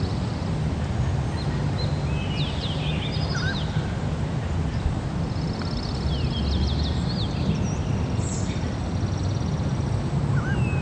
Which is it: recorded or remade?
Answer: recorded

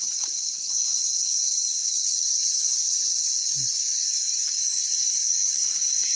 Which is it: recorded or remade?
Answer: remade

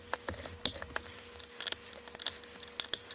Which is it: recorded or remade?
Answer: recorded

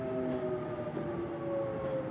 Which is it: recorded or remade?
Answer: recorded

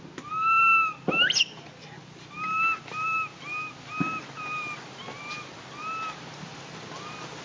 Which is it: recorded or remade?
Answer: recorded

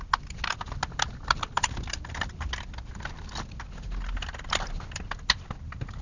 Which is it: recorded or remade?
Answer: recorded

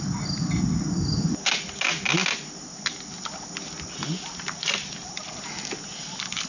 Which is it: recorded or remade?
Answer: recorded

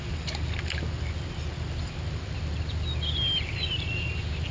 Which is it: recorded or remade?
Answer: recorded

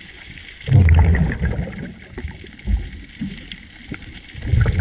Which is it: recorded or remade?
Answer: recorded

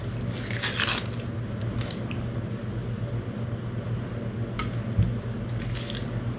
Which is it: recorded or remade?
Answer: recorded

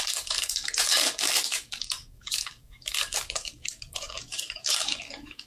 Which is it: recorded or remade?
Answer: remade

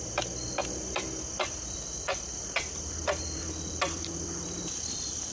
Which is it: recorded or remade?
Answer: recorded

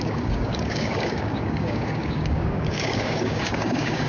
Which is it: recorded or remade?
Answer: remade